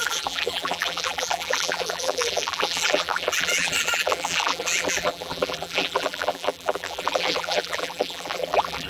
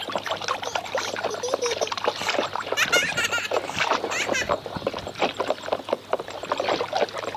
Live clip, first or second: second